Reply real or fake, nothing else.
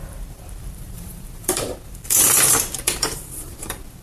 fake